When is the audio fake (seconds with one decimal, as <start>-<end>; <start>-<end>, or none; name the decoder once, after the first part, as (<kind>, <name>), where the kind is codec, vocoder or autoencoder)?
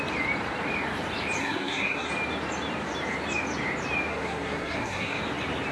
1.4-2.1 (codec, SNAC); 4.1-5.2